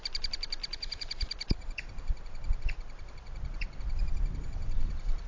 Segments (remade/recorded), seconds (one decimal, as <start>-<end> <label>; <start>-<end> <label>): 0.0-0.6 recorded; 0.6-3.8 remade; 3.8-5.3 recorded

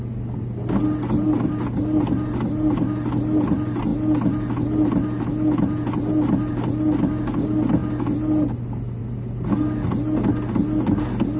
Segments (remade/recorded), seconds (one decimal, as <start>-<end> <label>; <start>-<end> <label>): 0.0-11.4 recorded

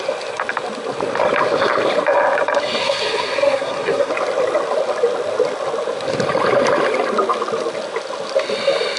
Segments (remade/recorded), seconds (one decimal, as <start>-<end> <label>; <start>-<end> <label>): 0.0-2.8 recorded; 2.8-4.1 remade; 4.1-9.0 recorded

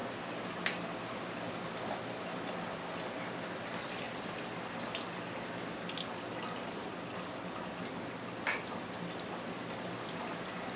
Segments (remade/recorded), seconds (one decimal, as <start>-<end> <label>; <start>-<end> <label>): 0.0-10.8 recorded

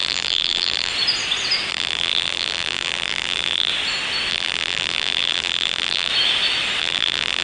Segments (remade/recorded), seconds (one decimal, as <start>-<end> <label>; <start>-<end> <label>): 0.0-0.9 remade; 0.9-1.7 recorded; 1.7-3.7 remade; 3.7-4.3 recorded; 4.3-6.1 remade; 6.1-6.8 recorded; 6.8-7.4 remade

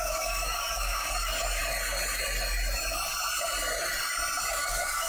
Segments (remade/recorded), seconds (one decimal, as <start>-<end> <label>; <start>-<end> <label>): 0.0-1.6 remade; 1.6-4.5 recorded; 4.5-5.1 remade